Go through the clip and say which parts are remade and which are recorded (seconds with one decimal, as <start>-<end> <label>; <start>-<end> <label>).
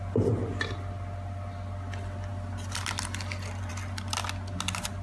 0.0-5.0 recorded